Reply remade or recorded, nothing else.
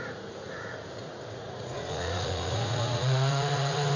remade